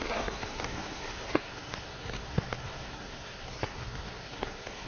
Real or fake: fake